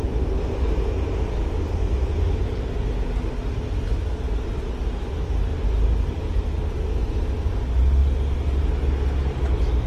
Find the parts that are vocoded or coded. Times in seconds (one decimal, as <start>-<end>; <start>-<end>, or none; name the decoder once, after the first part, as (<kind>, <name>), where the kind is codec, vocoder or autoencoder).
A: none